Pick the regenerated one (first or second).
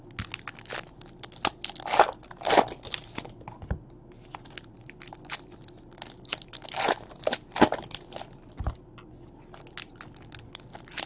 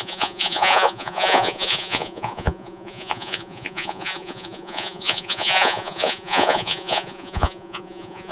second